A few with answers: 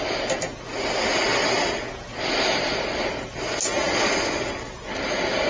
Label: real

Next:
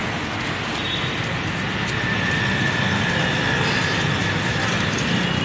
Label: real